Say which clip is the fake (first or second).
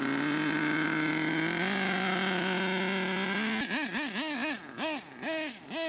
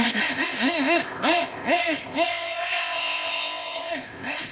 second